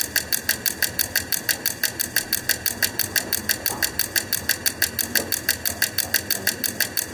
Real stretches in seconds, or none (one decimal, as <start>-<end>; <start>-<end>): 0.0-7.1